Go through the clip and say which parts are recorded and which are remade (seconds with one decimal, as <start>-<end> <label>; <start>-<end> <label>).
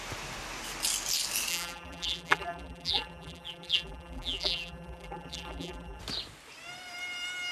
0.0-1.5 recorded; 1.5-6.0 remade; 6.0-7.5 recorded